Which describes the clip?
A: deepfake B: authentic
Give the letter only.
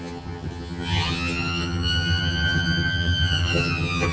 A